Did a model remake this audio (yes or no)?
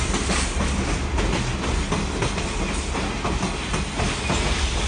no